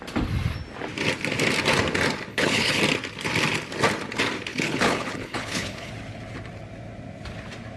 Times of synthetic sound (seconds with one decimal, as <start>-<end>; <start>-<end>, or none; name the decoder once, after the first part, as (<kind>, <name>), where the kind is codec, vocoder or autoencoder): 2.3-2.8 (codec, HILCodec); 4.5-5.9